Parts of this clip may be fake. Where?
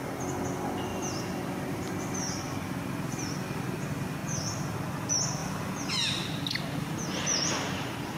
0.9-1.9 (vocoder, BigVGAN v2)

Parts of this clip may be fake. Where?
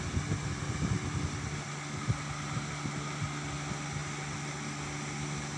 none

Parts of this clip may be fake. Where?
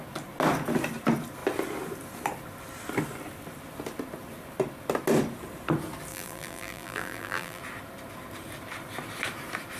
6.1-7.6 (vocoder, BigVGAN v2)